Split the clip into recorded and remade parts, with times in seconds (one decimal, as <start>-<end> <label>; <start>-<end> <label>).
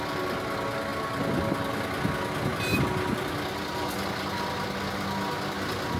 0.0-6.0 recorded